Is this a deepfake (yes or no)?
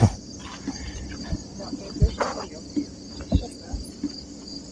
no